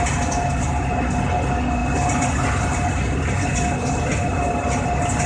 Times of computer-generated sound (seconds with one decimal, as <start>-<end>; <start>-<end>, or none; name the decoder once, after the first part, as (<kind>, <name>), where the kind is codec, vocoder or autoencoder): none